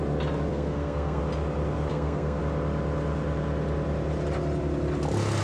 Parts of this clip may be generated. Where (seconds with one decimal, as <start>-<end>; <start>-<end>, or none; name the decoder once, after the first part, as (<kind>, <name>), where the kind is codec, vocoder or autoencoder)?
0.5-1.2 (codec, SNAC); 1.9-2.4